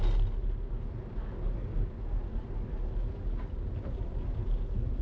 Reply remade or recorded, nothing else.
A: recorded